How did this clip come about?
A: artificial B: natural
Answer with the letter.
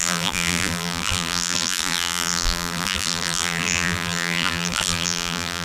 A